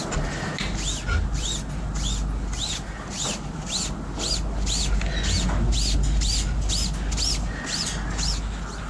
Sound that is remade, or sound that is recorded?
recorded